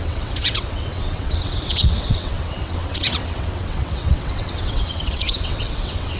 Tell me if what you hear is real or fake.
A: fake